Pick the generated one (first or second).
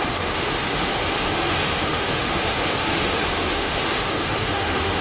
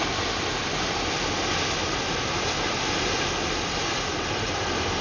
first